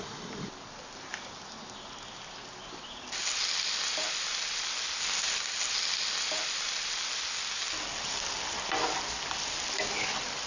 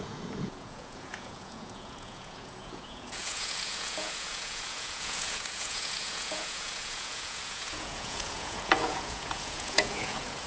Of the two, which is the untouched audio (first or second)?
first